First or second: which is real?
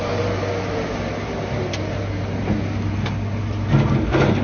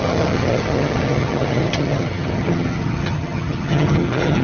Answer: first